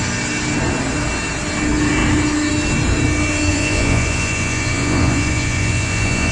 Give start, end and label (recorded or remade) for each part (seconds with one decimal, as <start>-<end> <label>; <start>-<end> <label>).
0.0-3.5 recorded; 3.5-6.3 remade